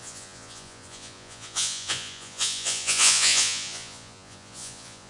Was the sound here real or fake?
fake